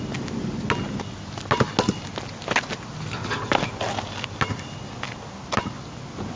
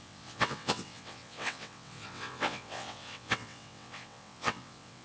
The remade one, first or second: second